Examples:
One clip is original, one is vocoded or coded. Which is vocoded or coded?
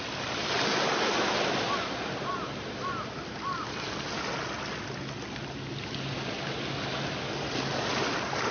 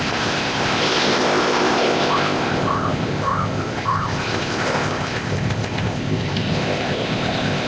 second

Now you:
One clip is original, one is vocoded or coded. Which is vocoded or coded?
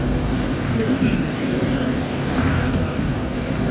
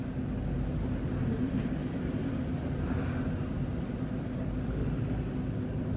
first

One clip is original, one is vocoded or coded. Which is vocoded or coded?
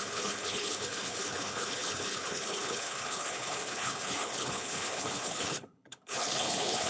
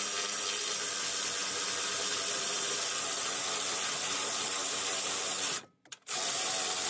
first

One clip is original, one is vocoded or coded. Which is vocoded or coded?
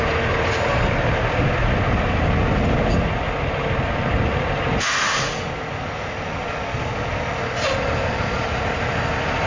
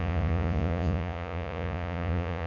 second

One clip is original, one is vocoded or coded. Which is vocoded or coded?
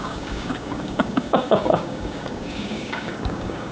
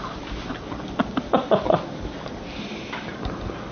first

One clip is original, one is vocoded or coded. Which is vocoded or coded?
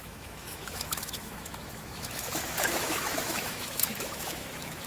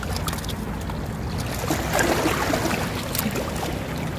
first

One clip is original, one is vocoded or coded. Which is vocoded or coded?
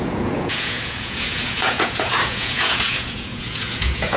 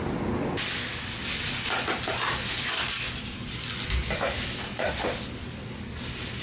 first